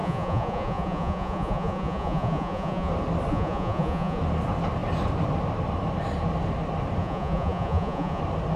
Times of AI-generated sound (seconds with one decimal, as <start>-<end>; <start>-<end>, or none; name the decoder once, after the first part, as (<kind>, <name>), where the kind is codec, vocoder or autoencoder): 0.0-2.9 (vocoder, Vocos); 3.3-4.2; 7.0-8.2